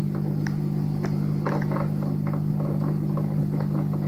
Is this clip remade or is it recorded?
recorded